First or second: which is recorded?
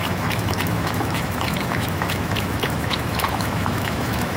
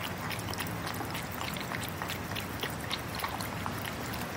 second